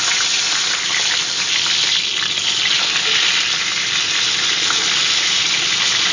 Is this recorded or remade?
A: recorded